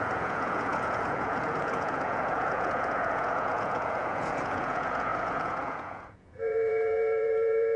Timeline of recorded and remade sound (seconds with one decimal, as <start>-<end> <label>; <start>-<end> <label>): 0.0-7.8 remade